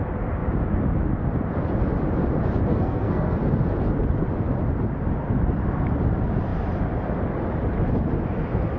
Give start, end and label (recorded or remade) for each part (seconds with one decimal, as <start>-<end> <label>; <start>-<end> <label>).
0.0-2.7 recorded; 2.7-3.4 remade; 3.4-8.8 recorded